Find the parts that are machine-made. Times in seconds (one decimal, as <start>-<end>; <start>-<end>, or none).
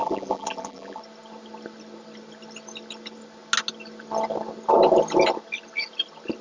0.0-1.0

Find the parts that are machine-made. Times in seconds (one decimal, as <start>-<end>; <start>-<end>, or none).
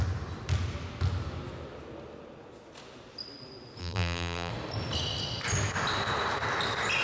3.8-4.5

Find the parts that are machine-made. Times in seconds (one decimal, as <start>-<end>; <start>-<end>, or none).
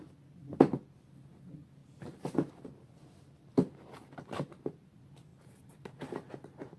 1.8-2.5; 5.3-6.3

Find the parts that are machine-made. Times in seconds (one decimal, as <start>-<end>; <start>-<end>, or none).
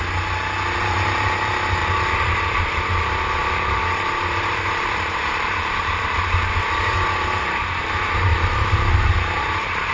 1.8-6.6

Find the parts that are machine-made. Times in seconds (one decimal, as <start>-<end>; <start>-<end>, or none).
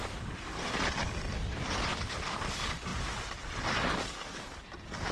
0.0-0.7; 1.9-2.5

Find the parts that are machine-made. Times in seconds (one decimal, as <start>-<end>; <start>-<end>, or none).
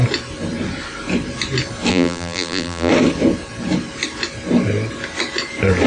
1.9-2.9